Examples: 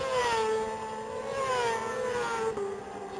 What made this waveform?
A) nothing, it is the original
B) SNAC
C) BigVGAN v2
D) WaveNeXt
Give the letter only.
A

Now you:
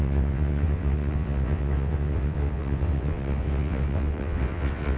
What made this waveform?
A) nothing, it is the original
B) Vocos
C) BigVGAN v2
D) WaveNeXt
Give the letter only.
D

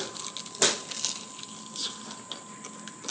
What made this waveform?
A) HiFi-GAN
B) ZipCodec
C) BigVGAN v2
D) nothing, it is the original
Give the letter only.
D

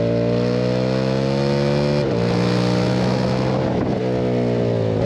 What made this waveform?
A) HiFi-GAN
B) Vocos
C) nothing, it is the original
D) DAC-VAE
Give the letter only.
C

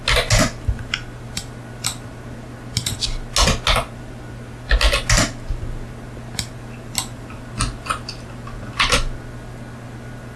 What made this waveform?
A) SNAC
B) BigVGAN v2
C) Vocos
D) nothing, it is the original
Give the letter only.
D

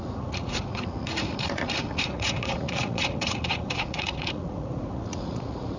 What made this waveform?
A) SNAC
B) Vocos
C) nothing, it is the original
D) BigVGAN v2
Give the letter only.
B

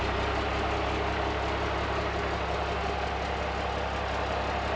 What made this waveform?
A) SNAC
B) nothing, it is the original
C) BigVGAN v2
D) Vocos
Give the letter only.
B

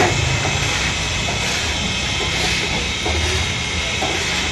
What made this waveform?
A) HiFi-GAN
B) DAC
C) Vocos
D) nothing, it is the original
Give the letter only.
D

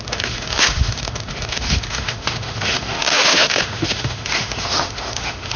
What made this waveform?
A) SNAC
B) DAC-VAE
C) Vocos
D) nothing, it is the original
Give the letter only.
B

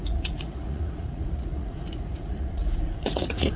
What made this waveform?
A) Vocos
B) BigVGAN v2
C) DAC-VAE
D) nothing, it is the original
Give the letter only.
A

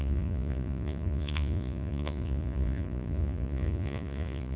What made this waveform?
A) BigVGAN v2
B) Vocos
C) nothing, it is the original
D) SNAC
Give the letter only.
B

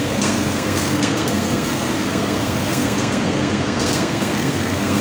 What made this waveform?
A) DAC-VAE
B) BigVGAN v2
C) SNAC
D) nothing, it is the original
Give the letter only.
C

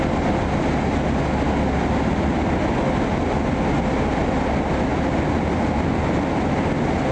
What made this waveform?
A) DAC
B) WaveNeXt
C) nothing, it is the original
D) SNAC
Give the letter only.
C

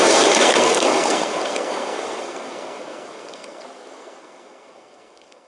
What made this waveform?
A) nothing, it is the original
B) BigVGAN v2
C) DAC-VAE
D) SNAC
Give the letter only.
D